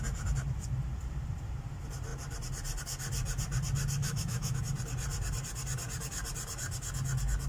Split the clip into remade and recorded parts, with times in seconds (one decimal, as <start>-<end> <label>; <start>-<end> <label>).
0.0-4.0 recorded; 4.0-4.6 remade; 4.6-7.5 recorded